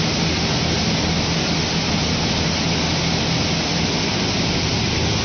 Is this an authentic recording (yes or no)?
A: yes